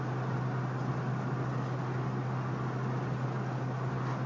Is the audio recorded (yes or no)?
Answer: yes